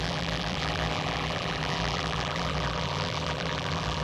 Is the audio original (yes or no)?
no